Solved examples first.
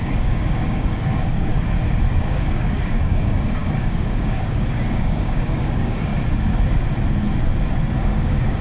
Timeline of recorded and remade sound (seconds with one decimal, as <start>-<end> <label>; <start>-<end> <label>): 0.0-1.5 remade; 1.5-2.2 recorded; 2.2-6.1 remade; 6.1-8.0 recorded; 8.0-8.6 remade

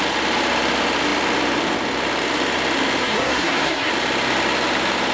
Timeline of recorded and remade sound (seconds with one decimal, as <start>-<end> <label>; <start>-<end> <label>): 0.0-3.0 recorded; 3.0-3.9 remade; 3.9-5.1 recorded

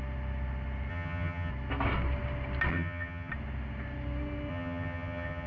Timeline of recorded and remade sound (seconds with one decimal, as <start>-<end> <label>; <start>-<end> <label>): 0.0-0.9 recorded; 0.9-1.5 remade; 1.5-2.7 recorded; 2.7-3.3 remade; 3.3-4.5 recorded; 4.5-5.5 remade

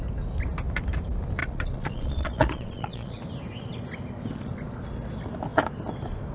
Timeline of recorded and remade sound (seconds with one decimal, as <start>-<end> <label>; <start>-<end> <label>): 0.0-1.4 recorded; 1.4-3.2 remade; 3.2-6.3 recorded

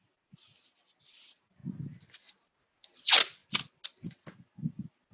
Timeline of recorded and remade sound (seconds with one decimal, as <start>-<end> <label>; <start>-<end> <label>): 0.0-5.1 recorded

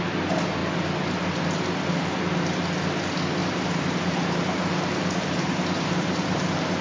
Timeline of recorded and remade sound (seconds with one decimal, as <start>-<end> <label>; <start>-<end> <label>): 0.0-3.4 recorded; 3.4-6.8 remade

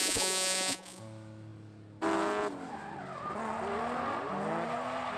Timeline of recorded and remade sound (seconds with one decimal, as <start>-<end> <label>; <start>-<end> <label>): 0.0-1.0 remade; 1.0-5.2 recorded

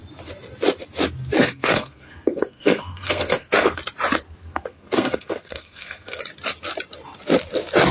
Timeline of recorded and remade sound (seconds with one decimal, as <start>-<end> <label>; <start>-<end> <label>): 0.0-1.4 recorded; 1.4-3.8 remade; 3.8-4.4 recorded; 4.4-6.2 remade; 6.2-7.9 recorded